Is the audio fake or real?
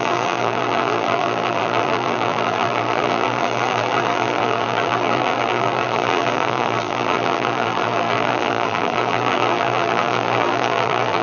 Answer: fake